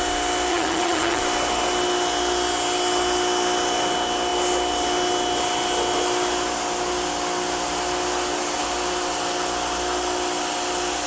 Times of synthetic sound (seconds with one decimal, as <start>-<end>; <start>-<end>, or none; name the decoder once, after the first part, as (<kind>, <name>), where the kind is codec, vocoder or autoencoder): 0.5-1.2 (vocoder, HiFi-GAN)